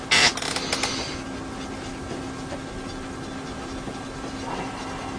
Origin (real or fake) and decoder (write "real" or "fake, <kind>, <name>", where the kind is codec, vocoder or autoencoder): real